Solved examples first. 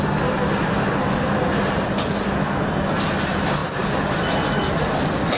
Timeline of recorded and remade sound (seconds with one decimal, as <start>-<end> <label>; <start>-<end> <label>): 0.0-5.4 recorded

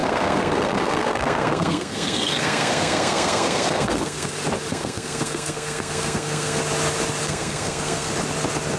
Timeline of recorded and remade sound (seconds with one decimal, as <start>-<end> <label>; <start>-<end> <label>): 0.0-4.3 remade; 4.3-4.7 recorded; 4.7-6.6 remade; 6.6-7.2 recorded; 7.2-8.1 remade; 8.1-8.8 recorded

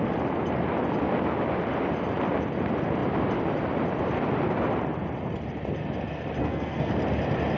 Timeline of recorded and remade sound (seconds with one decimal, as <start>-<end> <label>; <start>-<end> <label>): 0.0-6.4 recorded; 6.4-6.9 remade; 6.9-7.6 recorded

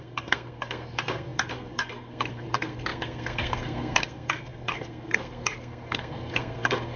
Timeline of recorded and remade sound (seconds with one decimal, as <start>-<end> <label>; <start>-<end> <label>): 0.0-7.0 remade

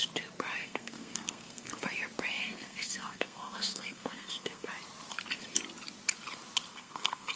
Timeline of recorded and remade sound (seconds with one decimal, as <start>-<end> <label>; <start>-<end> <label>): 0.0-0.6 recorded; 0.6-1.7 remade; 1.7-2.4 recorded; 2.4-4.7 remade; 4.7-6.7 recorded; 6.7-7.4 remade